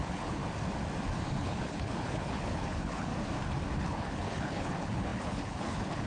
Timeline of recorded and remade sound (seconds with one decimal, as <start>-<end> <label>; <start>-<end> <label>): 0.0-0.4 remade; 0.4-1.4 recorded; 1.4-3.1 remade; 3.1-3.8 recorded; 3.8-6.1 remade